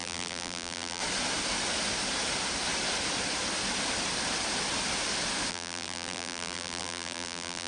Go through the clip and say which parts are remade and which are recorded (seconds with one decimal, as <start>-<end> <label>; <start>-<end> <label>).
0.0-1.0 remade; 1.0-5.5 recorded; 5.5-7.7 remade

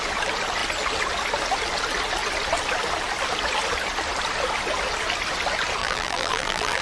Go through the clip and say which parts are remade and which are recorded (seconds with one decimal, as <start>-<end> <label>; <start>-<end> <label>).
0.0-5.8 recorded; 5.8-6.8 remade

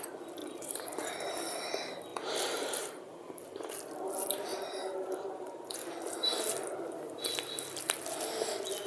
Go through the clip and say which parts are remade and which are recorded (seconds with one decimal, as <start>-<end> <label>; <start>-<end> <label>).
0.0-0.4 recorded; 0.4-1.7 remade; 1.7-2.1 recorded; 2.1-3.7 remade; 3.7-4.5 recorded; 4.5-5.9 remade; 5.9-8.9 recorded

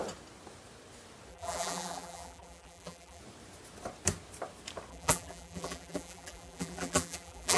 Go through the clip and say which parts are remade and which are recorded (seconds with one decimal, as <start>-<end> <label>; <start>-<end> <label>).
0.0-1.3 recorded; 1.3-3.2 remade; 3.2-4.9 recorded; 4.9-7.6 remade

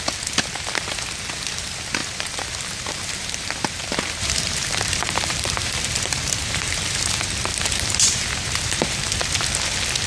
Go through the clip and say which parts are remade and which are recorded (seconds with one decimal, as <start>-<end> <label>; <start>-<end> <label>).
0.0-2.0 recorded; 2.0-7.1 remade; 7.1-7.5 recorded; 7.5-9.2 remade; 9.2-10.1 recorded

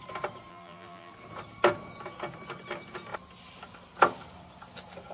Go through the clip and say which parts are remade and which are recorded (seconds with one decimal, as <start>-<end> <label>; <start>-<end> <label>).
0.0-0.5 recorded; 0.5-1.1 remade; 1.1-5.1 recorded

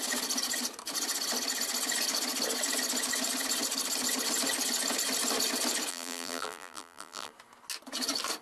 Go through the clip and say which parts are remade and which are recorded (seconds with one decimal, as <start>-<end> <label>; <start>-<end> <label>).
0.0-5.9 recorded; 5.9-7.3 remade; 7.3-8.4 recorded